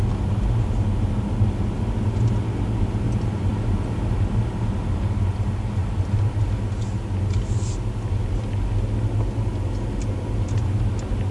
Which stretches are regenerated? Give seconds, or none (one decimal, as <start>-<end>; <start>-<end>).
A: none

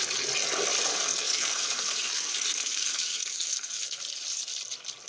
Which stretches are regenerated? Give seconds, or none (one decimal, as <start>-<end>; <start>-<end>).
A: 0.9-4.0

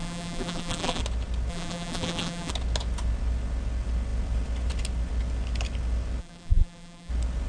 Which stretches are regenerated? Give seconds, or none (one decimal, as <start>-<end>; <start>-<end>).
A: 0.0-1.0; 1.5-2.5; 6.2-7.1

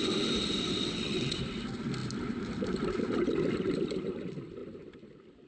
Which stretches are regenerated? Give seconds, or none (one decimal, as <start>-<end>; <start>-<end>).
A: 0.7-1.4

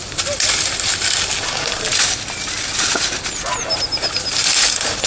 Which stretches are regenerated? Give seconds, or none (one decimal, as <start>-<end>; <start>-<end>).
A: none

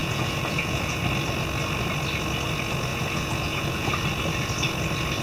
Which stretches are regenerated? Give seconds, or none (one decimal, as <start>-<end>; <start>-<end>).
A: 0.0-1.0; 2.9-3.9

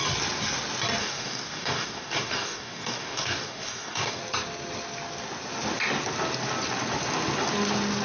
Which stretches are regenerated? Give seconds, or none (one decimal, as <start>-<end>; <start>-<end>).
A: 1.0-4.2

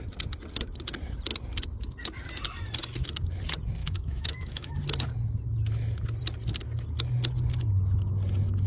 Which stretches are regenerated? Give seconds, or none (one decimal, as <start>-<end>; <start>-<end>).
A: 3.8-4.7